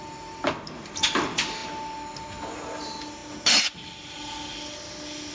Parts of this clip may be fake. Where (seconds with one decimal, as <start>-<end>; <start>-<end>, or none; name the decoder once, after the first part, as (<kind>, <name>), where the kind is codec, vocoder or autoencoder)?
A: none